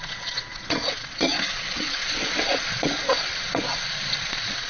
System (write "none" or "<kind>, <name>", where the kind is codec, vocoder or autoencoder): vocoder, Vocos